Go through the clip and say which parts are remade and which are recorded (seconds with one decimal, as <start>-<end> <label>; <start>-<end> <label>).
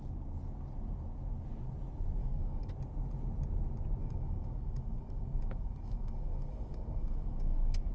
0.0-2.2 recorded; 2.2-2.7 remade; 2.7-4.0 recorded; 4.0-7.9 remade